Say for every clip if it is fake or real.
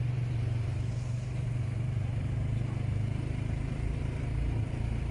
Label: fake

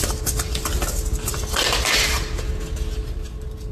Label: real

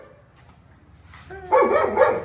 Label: real